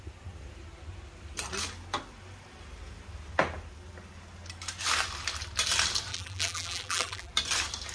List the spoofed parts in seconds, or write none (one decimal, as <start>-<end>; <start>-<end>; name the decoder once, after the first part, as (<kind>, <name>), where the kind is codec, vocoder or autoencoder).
6.1-7.3 (vocoder, BigVGAN v2)